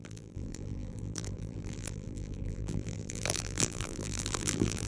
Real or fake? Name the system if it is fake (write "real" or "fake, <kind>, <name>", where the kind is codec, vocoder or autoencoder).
fake, vocoder, BigVGAN v2